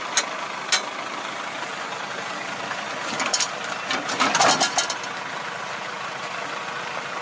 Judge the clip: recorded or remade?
recorded